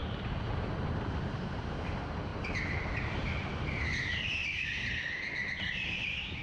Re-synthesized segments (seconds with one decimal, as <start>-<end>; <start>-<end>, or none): 4.4-4.9